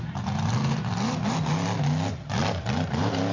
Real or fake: real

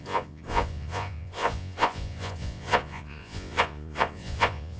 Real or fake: fake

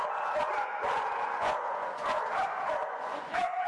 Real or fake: fake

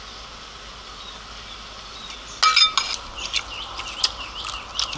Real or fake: real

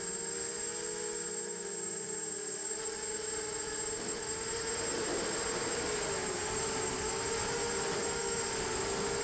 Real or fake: real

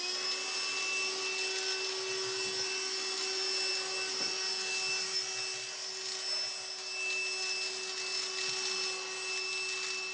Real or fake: real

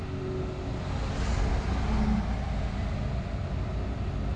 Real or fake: real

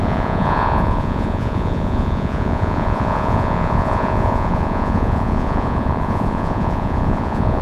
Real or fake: fake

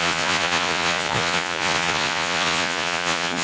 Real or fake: fake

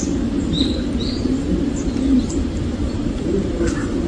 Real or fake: real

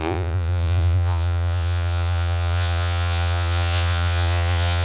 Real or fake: fake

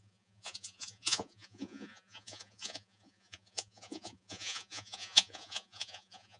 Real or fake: fake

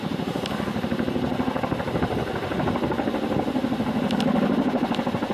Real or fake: real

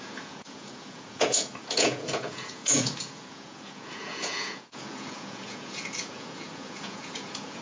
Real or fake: fake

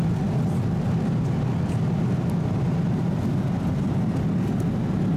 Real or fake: real